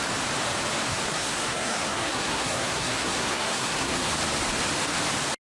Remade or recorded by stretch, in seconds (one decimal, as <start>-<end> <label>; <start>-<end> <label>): 0.0-0.9 recorded; 0.9-4.1 remade; 4.1-5.4 recorded

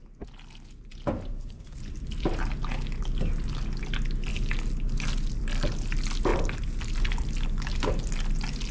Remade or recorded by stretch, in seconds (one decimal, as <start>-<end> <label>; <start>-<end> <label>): 0.0-1.3 recorded; 1.3-1.8 remade; 1.8-8.7 recorded